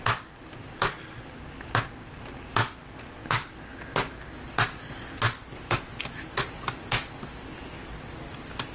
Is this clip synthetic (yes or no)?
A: no